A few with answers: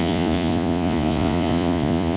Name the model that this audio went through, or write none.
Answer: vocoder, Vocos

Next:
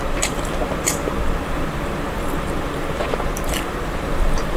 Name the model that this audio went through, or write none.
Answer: vocoder, BigVGAN v2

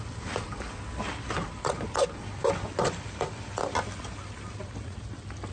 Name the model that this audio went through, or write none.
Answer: none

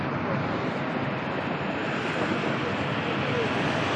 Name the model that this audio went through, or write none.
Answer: none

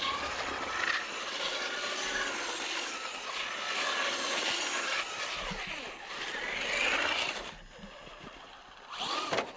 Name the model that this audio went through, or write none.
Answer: none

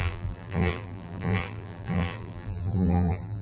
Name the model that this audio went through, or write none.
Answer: vocoder, BigVGAN v2